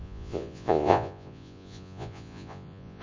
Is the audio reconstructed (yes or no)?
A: yes